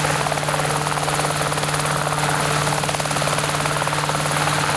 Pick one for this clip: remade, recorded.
recorded